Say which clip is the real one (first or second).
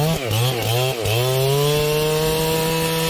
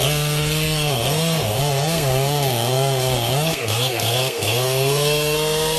first